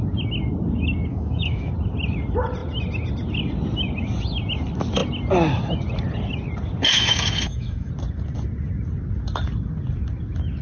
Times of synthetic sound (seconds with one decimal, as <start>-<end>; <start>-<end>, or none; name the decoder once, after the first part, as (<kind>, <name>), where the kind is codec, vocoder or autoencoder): 1.1-1.7 (autoencoder, DAC-VAE); 6.9-7.9